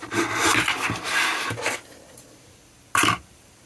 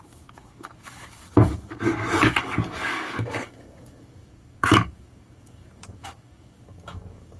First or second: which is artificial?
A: second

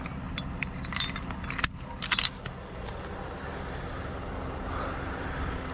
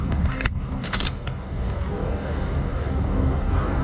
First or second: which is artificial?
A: second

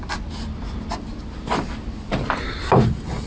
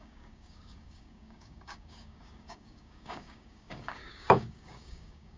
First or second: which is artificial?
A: second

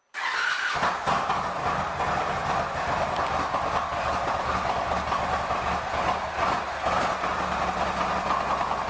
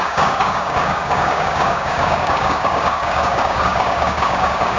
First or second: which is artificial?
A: second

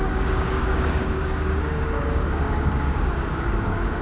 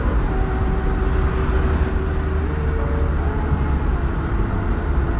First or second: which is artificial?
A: first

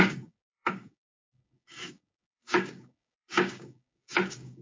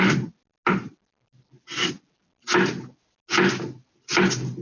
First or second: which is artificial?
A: first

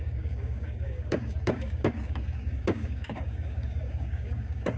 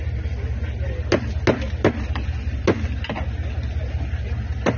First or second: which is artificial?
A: first